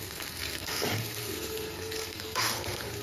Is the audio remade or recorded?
remade